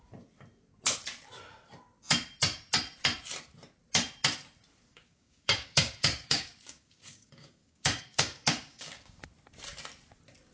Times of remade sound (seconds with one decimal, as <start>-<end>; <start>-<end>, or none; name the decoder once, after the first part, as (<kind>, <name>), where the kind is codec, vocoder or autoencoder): 4.9-9.2 (codec, DAC)